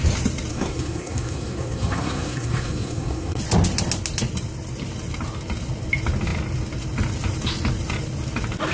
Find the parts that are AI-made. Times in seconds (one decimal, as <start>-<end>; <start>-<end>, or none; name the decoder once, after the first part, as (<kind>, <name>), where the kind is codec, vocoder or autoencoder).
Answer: 0.5-3.4 (codec, SNAC)

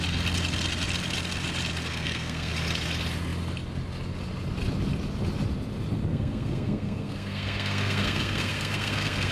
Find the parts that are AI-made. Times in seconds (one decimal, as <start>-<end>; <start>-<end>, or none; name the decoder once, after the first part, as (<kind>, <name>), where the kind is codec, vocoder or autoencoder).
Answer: 1.9-2.5 (codec, SNAC); 6.1-9.3

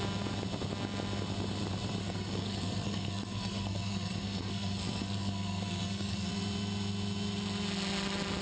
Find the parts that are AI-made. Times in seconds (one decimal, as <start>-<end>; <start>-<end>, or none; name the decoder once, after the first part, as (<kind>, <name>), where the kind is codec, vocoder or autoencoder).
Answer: 2.0-6.3 (codec, SNAC)

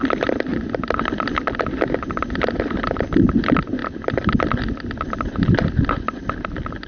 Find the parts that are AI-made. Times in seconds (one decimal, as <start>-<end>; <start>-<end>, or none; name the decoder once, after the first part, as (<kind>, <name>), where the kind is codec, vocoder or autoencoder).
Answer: none

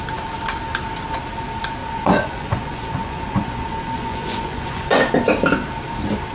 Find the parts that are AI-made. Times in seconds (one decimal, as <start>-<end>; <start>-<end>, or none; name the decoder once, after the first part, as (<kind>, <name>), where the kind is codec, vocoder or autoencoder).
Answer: 1.8-5.1 (vocoder, Vocos)